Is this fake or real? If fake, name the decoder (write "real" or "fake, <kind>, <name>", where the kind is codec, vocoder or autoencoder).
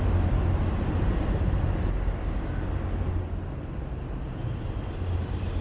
real